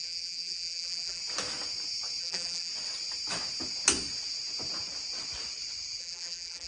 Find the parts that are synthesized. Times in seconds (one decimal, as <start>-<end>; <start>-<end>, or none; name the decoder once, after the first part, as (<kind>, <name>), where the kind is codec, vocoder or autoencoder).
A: 0.0-1.2 (vocoder, BigVGAN v2); 2.2-2.7; 6.0-6.7